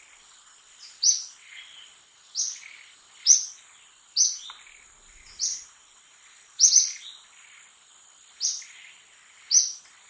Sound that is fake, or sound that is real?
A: real